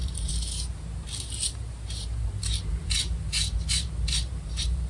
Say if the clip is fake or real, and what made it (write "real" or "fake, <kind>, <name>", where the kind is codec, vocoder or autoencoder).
fake, vocoder, BigVGAN v2